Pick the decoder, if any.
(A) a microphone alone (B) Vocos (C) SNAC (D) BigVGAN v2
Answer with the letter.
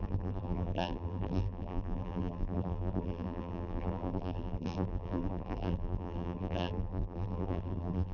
D